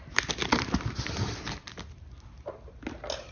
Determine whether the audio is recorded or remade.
recorded